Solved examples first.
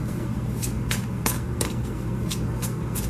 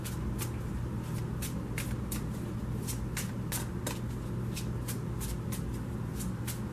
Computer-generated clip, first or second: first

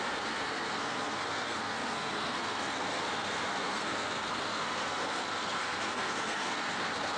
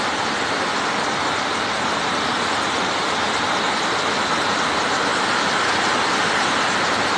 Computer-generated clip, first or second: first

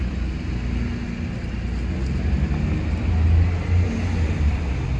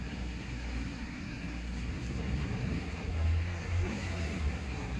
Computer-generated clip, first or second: second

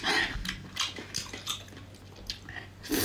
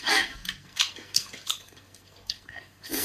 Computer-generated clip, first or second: second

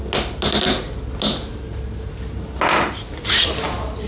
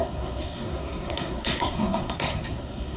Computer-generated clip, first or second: second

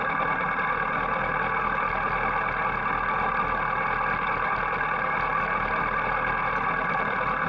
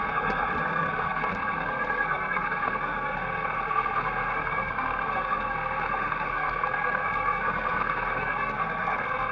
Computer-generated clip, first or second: second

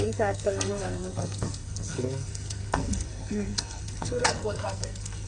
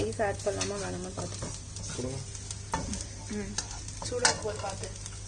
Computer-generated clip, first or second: first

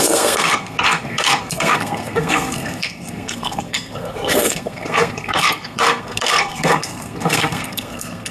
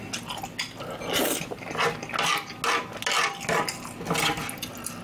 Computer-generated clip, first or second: first